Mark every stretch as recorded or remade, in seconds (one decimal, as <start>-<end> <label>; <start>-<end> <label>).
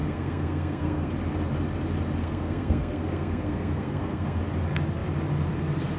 0.0-1.1 remade; 1.1-2.2 recorded; 2.2-4.4 remade; 4.4-6.0 recorded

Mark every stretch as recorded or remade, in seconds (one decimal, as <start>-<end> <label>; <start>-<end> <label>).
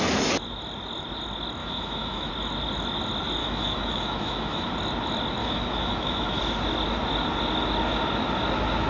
0.0-1.6 recorded; 1.6-2.3 remade; 2.3-3.4 recorded; 3.4-4.7 remade; 4.7-5.4 recorded; 5.4-6.4 remade; 6.4-8.9 recorded